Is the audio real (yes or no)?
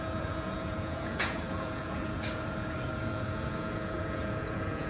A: no